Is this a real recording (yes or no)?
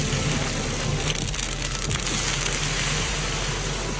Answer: yes